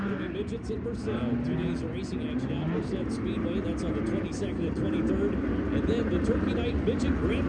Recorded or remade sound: recorded